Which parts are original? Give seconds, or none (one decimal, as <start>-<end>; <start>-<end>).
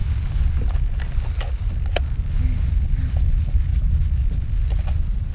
0.0-5.3